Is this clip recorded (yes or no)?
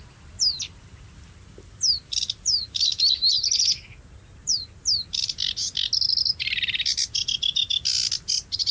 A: yes